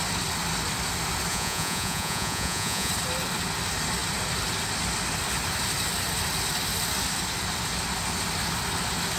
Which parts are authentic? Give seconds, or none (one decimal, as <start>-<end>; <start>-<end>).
0.0-1.3; 2.9-9.2

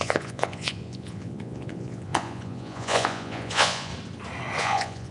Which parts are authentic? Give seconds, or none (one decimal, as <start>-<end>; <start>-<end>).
3.9-4.6